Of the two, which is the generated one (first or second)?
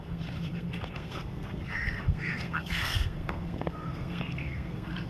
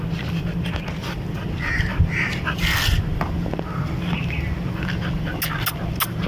first